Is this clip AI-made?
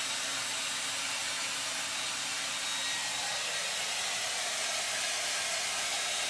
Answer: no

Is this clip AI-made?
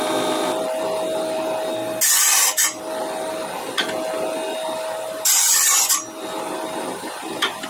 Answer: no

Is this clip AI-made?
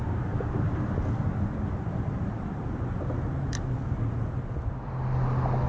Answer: no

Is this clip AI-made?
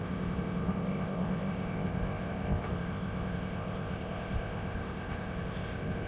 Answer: yes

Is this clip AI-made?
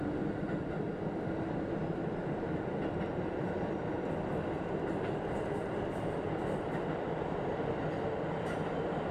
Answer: no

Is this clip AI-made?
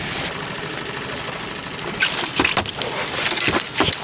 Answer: no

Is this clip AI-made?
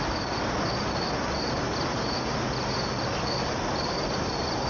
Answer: no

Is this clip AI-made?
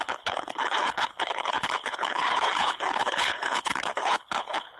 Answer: yes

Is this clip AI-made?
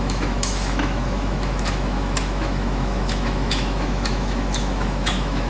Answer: yes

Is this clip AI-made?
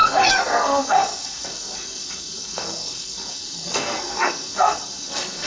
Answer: yes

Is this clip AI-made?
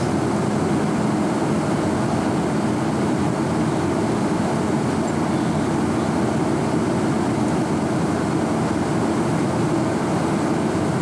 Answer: no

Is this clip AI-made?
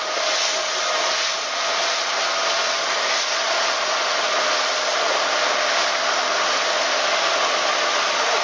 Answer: no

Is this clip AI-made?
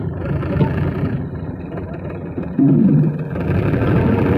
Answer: yes